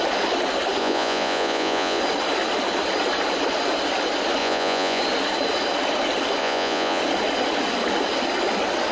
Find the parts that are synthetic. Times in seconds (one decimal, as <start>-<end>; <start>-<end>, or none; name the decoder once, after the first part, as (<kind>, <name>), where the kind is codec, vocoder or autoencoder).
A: 0.8-2.0 (vocoder, Vocos); 4.4-5.0; 6.4-7.0